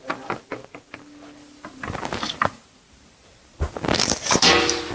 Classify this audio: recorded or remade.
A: recorded